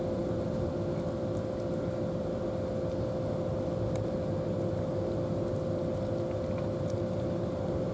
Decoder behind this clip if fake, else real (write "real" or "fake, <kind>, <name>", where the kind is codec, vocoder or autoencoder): real